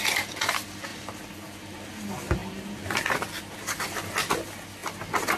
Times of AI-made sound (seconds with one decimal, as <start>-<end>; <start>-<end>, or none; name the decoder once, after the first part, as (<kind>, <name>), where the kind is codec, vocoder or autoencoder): none